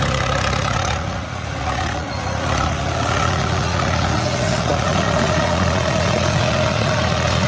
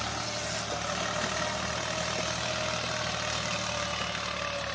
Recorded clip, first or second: second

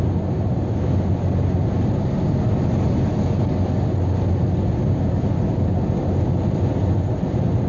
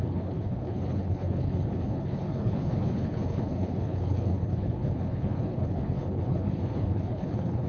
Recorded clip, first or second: first